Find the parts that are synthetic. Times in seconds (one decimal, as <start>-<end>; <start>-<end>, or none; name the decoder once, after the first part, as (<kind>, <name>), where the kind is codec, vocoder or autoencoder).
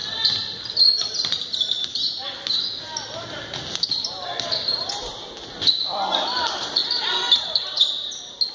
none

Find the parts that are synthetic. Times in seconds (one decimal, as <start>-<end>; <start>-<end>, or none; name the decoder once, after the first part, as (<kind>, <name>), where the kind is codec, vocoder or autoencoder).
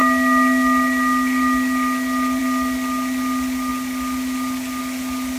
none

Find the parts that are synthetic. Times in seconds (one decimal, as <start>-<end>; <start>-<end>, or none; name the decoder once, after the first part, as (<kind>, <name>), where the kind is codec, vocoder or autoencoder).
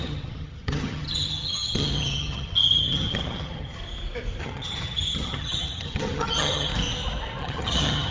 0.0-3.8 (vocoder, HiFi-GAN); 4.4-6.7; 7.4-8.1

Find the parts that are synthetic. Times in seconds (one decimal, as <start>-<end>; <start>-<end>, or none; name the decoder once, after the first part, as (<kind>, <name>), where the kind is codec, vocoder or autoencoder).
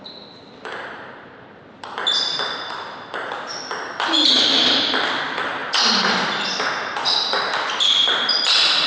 none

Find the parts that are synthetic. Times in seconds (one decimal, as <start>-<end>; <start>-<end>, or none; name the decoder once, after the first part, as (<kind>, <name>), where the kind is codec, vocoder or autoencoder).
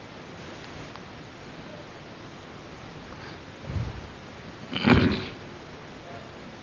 none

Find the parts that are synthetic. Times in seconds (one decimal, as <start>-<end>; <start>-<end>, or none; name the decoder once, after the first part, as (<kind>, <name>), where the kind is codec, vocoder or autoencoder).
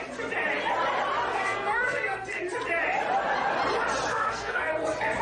1.3-2.4 (codec, SNAC); 4.1-4.7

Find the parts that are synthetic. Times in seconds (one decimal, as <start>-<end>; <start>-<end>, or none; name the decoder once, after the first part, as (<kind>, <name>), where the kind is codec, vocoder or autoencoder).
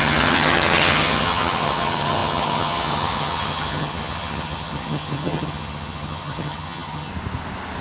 0.0-7.1 (vocoder, HiFi-GAN)